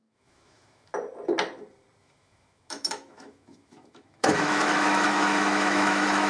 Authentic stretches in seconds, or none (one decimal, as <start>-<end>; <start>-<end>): 0.9-2.0